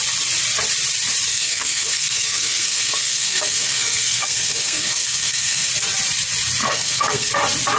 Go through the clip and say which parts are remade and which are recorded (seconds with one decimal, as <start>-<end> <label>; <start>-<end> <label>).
0.0-1.3 recorded; 1.3-5.7 remade; 5.7-6.6 recorded; 6.6-7.3 remade; 7.3-7.8 recorded